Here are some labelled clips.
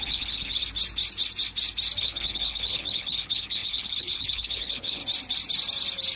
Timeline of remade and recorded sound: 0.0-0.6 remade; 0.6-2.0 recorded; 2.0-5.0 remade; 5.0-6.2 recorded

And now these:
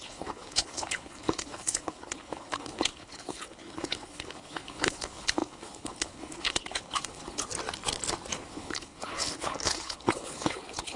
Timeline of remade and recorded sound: 0.0-7.5 remade; 7.5-8.4 recorded; 8.4-11.0 remade

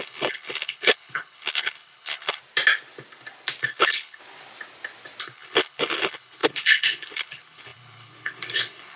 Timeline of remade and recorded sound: 0.0-2.4 remade; 2.4-3.6 recorded; 3.6-4.2 remade; 4.2-5.2 recorded; 5.2-9.0 remade

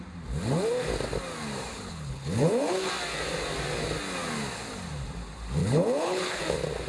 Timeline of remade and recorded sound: 0.0-1.7 recorded; 1.7-2.9 remade; 2.9-5.6 recorded; 5.6-6.4 remade; 6.4-6.9 recorded

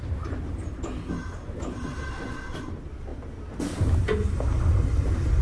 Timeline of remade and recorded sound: 0.0-5.4 recorded

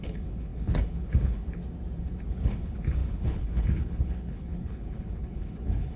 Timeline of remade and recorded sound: 0.0-1.6 remade; 1.6-2.2 recorded; 2.2-6.0 remade

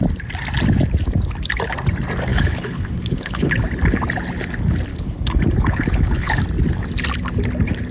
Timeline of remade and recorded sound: 0.0-2.3 recorded; 2.3-3.6 remade; 3.6-4.9 recorded; 4.9-6.4 remade; 6.4-7.9 recorded